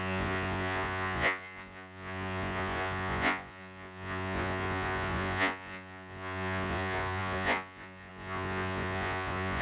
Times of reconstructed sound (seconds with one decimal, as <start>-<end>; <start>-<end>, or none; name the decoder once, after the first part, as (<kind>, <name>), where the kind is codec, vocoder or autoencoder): 0.0-9.6 (vocoder, Vocos)